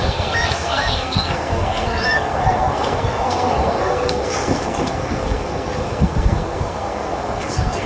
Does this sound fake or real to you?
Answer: fake